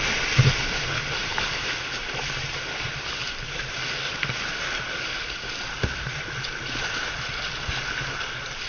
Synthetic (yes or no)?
no